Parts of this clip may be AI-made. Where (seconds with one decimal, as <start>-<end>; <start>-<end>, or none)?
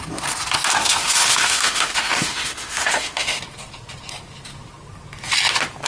0.7-3.4